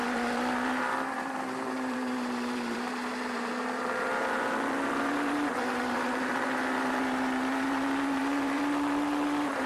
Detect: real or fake fake